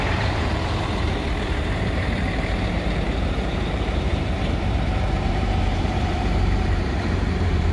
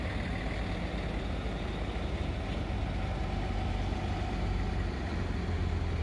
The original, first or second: second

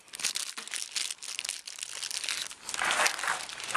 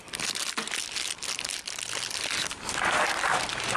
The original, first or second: first